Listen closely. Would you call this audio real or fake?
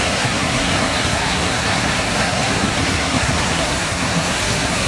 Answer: fake